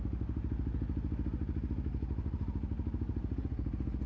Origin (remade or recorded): recorded